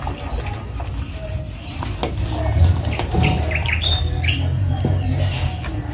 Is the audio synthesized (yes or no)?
no